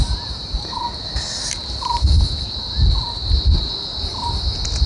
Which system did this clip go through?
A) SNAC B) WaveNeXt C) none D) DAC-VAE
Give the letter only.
C